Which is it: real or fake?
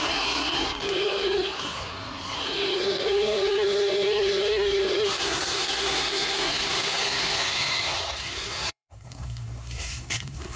fake